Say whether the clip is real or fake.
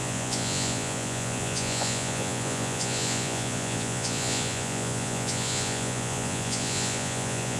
fake